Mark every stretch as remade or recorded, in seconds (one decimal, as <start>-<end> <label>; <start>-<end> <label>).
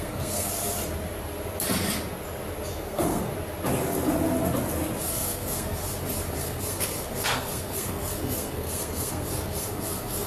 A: 0.0-0.5 remade; 0.5-2.7 recorded; 2.7-3.3 remade; 3.3-5.0 recorded; 5.0-5.8 remade; 5.8-6.4 recorded; 6.4-10.3 remade